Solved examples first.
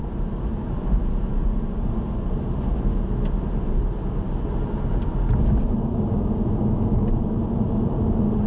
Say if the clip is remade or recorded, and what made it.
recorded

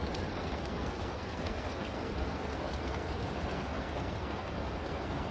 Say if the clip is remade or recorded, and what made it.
remade, codec, SNAC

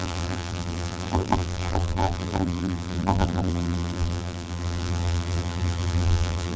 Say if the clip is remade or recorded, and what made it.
remade, vocoder, BigVGAN v2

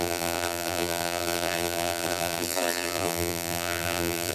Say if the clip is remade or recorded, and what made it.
remade, vocoder, BigVGAN v2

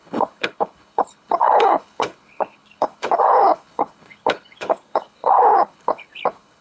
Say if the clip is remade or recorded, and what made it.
remade, codec, HILCodec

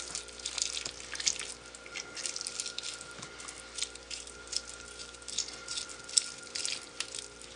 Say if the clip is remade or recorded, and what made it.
recorded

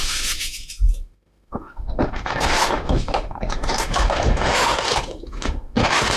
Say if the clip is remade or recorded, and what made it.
remade, autoencoder, DAC-VAE